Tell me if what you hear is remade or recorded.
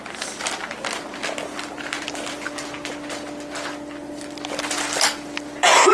recorded